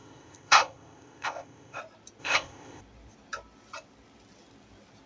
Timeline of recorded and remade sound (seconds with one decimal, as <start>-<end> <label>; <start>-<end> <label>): 0.0-1.8 remade; 1.8-2.2 recorded; 2.2-2.8 remade; 2.8-5.1 recorded